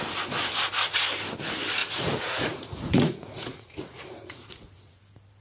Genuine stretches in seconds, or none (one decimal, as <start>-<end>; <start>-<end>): 0.0-1.8; 5.0-5.4